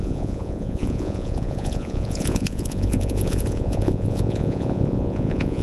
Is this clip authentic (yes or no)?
no